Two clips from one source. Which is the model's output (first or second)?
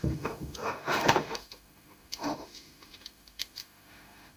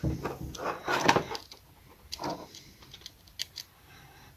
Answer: first